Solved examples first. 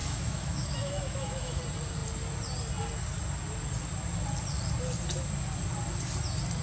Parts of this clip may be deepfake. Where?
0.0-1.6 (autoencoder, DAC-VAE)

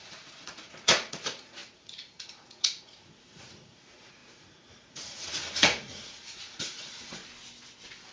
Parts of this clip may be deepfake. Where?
0.0-7.2 (vocoder, Vocos)

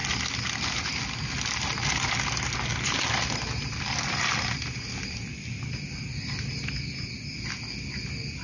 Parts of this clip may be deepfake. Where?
none

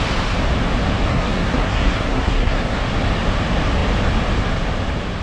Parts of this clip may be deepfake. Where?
1.1-2.8 (codec, SNAC)

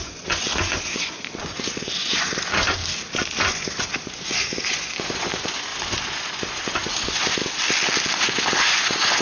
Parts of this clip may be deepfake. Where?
0.0-2.8 (vocoder, Vocos); 3.5-7.4; 8.1-9.2